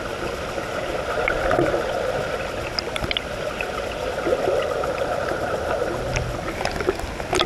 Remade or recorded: recorded